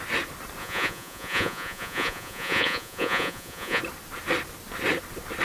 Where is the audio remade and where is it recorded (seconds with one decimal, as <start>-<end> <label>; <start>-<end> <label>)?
0.0-0.6 recorded; 0.6-3.8 remade; 3.8-5.4 recorded